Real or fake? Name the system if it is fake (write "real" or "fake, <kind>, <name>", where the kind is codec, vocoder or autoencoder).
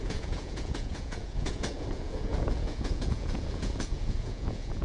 fake, vocoder, Vocos